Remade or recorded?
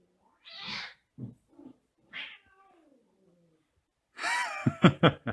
recorded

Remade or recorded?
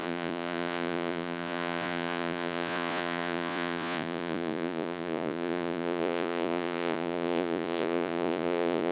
remade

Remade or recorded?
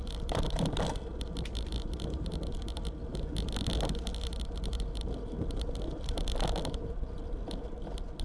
recorded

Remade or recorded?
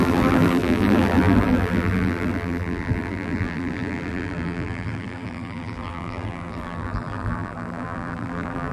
remade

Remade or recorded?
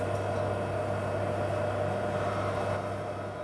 recorded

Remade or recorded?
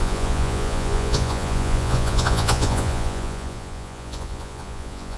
remade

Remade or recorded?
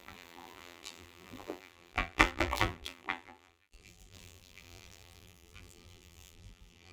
remade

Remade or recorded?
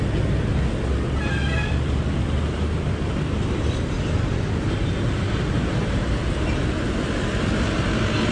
recorded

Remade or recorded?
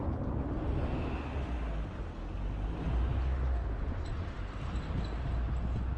recorded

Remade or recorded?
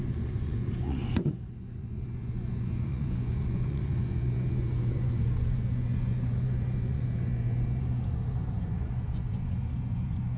remade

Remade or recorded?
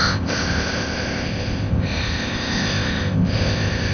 remade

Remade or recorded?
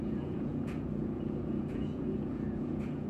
remade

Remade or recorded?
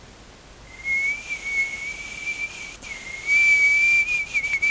recorded